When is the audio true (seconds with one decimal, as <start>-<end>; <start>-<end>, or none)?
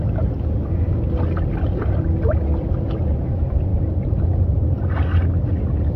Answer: 0.0-6.0